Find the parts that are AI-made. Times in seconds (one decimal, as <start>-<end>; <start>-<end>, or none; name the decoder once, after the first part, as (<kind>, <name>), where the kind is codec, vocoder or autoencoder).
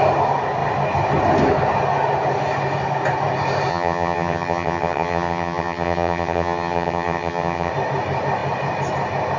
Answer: 3.7-7.7 (vocoder, HiFi-GAN)